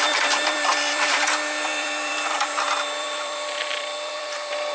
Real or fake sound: fake